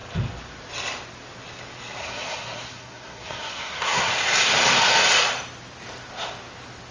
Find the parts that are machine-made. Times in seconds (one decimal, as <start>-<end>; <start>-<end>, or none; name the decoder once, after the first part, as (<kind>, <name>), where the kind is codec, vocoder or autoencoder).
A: 2.0-4.1 (codec, SNAC)